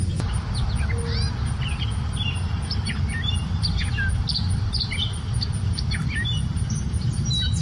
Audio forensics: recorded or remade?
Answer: recorded